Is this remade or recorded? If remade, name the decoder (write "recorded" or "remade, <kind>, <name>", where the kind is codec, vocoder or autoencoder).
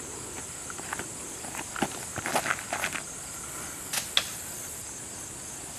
recorded